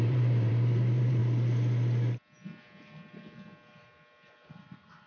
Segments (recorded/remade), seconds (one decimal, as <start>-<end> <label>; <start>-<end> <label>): 0.0-1.2 remade; 1.2-4.3 recorded; 4.3-5.1 remade